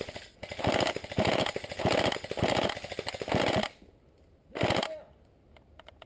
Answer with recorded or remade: recorded